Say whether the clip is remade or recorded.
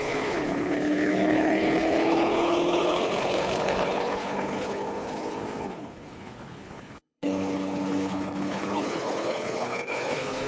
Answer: remade